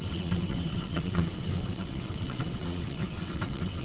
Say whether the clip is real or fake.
fake